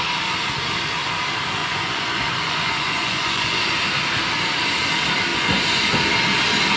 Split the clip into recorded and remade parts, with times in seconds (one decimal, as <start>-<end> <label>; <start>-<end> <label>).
0.0-1.6 recorded; 1.6-3.6 remade; 3.6-5.3 recorded; 5.3-5.9 remade; 5.9-6.8 recorded